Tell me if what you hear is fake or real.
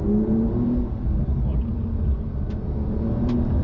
fake